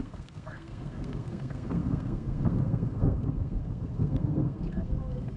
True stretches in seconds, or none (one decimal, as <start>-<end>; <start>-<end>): none